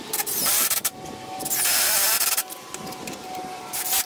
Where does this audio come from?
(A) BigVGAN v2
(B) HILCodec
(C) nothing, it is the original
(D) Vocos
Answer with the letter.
A